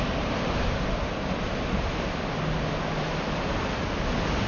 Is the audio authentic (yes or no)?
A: yes